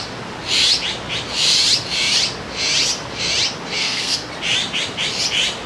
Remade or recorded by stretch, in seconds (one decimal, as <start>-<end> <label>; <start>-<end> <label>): 0.0-3.8 recorded; 3.8-4.3 remade; 4.3-5.7 recorded